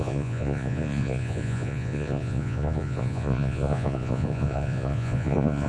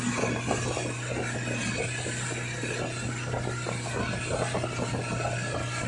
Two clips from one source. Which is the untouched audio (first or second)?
second